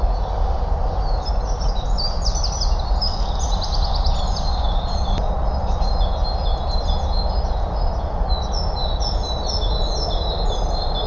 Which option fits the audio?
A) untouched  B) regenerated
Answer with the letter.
A